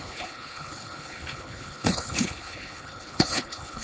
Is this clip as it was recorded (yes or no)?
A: no